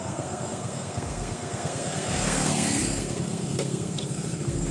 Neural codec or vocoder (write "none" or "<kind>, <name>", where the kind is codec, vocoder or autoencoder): codec, SNAC